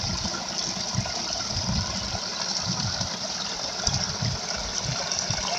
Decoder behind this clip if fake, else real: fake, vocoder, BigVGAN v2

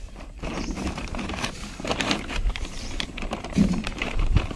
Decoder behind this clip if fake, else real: fake, vocoder, BigVGAN v2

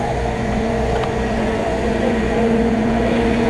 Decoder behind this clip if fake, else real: fake, vocoder, Vocos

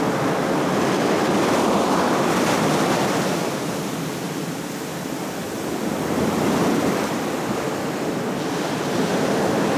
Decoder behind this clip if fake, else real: fake, vocoder, BigVGAN v2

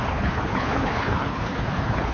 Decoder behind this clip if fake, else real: fake, codec, HILCodec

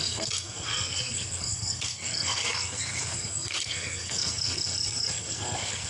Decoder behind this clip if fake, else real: fake, codec, SNAC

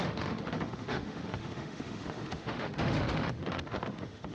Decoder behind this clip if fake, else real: fake, autoencoder, DAC-VAE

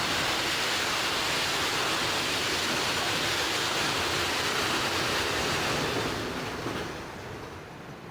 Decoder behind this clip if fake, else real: real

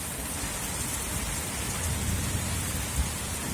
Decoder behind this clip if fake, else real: real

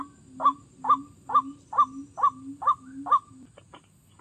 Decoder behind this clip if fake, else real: fake, vocoder, BigVGAN v2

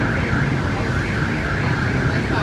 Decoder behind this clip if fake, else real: real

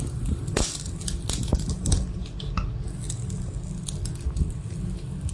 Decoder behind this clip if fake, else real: real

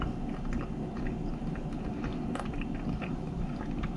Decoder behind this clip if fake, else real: real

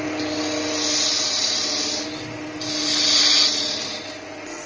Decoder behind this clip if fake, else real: real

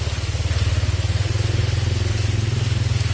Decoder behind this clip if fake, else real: real